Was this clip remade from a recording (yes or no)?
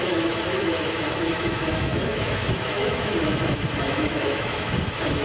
yes